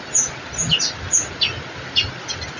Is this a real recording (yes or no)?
yes